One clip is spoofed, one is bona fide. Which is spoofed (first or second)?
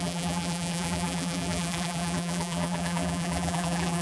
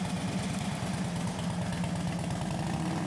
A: first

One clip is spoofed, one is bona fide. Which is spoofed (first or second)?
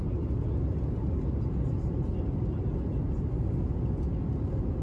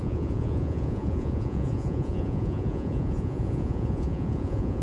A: second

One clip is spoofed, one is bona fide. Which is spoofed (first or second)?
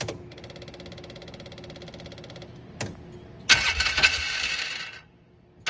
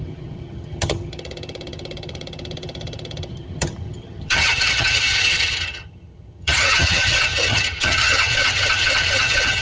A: second